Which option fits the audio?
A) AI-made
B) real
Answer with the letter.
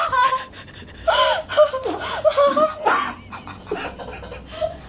B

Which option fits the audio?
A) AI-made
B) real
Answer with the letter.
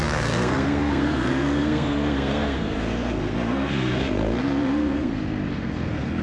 A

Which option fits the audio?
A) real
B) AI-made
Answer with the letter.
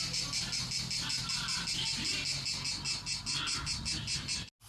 A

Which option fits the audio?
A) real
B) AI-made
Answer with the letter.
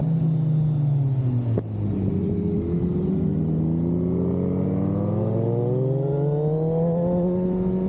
A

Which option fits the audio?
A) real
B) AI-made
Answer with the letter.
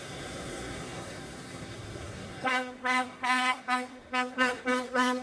B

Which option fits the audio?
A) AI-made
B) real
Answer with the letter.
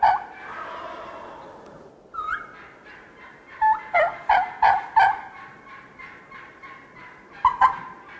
B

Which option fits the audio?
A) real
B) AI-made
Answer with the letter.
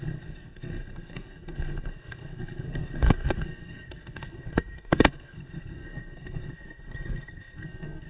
B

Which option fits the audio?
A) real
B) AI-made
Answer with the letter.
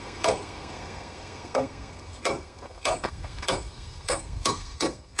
B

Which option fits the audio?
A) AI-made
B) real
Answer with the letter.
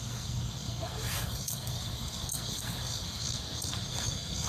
A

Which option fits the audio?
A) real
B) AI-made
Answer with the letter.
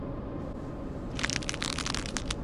A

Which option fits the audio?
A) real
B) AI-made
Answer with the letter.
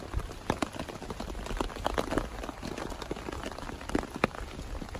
A